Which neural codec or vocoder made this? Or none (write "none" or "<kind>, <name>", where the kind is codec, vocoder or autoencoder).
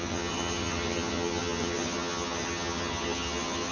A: vocoder, HiFi-GAN